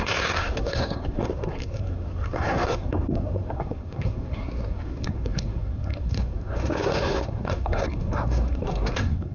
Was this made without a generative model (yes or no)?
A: no